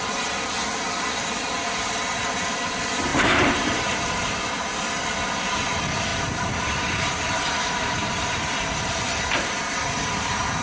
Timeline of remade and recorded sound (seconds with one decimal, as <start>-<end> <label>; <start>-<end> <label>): 0.0-3.1 recorded; 3.1-4.6 remade; 4.6-6.1 recorded; 6.1-9.9 remade; 9.9-10.6 recorded